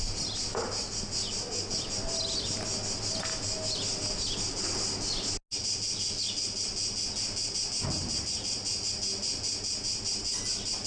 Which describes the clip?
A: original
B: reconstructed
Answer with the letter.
A